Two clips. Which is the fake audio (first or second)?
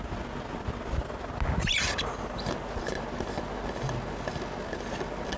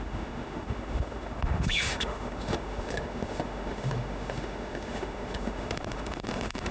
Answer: second